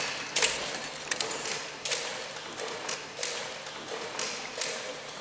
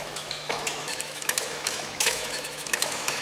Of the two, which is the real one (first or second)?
first